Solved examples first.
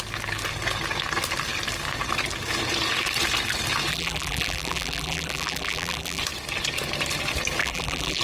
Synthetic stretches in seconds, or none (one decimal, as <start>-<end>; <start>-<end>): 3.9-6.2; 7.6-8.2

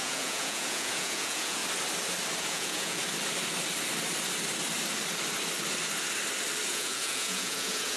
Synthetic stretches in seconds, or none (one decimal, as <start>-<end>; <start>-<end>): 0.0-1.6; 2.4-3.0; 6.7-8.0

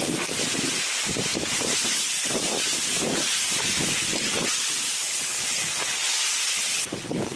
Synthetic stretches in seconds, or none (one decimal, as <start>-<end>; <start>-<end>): 5.0-5.7; 6.5-7.4

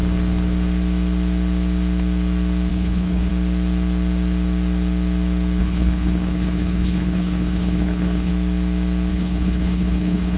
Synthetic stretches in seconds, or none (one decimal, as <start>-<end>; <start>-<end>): 2.7-3.3; 5.6-8.3; 9.1-10.4

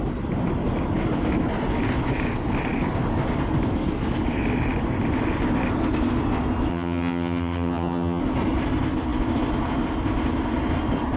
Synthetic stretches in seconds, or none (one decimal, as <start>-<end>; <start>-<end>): 6.7-8.2